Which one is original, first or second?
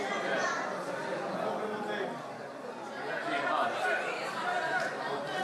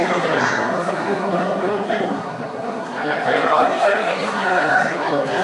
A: first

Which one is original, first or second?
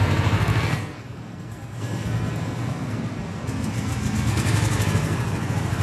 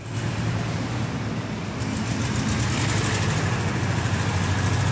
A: second